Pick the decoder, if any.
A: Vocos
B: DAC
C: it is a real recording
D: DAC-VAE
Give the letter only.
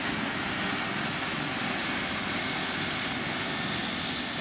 C